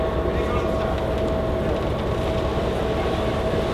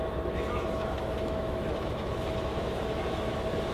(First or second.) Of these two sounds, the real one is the first